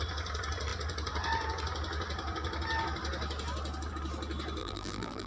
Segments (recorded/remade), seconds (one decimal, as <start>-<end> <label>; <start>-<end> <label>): 0.0-4.6 recorded; 4.6-5.3 remade